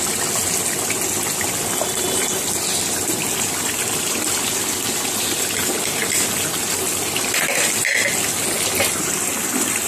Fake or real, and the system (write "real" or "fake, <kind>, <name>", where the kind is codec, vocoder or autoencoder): real